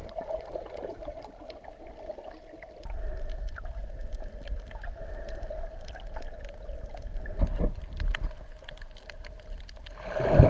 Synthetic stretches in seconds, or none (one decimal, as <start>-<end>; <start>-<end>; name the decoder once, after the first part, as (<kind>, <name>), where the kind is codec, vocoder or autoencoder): 0.0-1.2 (vocoder, Vocos)